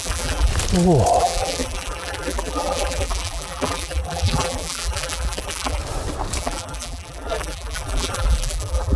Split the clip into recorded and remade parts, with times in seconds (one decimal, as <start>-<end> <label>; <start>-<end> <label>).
0.0-0.5 remade; 0.5-1.2 recorded; 1.2-5.8 remade; 5.8-6.4 recorded; 6.4-9.0 remade